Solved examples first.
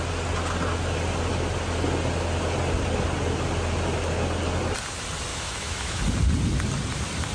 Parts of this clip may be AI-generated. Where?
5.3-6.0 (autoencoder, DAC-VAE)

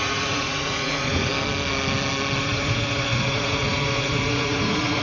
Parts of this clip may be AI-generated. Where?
0.0-1.3 (vocoder, Vocos); 2.4-5.0